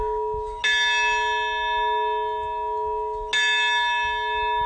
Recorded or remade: recorded